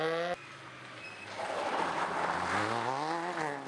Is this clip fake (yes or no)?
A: no